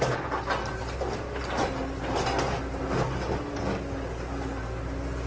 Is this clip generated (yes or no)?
no